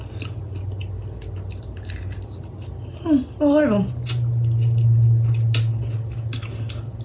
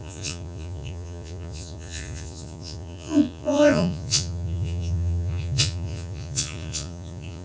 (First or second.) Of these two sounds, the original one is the first